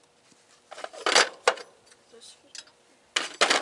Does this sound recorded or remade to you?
recorded